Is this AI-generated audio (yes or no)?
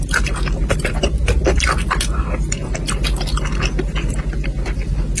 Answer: no